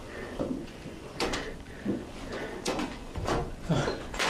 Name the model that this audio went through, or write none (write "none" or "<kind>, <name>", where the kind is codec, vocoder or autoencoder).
vocoder, Vocos